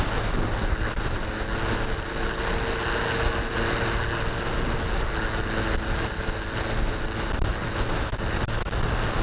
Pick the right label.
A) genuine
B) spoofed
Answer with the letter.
A